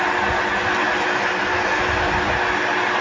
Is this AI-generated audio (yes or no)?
no